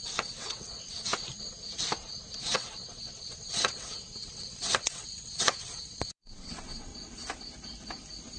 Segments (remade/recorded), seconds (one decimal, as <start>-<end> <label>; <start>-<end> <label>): 0.0-1.1 remade; 1.1-2.4 recorded; 2.4-6.9 remade; 6.9-8.4 recorded